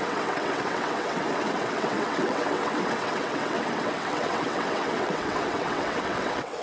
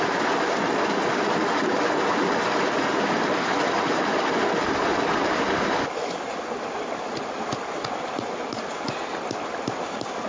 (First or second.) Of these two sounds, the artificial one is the first